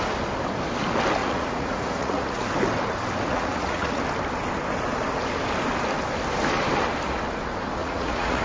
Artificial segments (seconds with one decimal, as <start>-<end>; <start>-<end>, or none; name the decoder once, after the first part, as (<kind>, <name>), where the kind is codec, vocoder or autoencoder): 1.2-2.4 (vocoder, Vocos); 3.3-4.0; 7.8-8.4